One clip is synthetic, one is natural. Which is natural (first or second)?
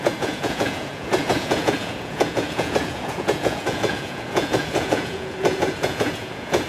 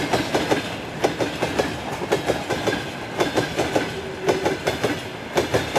second